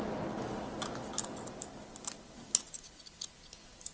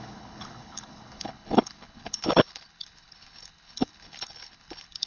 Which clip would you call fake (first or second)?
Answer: second